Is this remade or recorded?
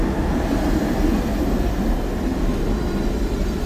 recorded